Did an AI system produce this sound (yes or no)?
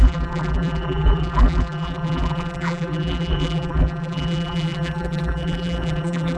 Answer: yes